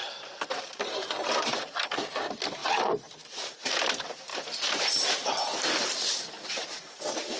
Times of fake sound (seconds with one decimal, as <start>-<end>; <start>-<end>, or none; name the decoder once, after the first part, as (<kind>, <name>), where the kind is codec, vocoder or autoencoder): 0.0-2.2 (vocoder, BigVGAN v2); 2.6-3.4